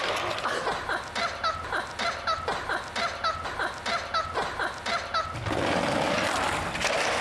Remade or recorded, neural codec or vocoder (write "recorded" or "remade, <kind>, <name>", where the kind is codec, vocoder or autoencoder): recorded